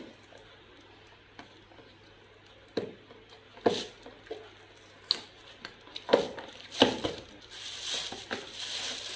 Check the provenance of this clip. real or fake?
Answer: real